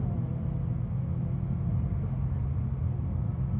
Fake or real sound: real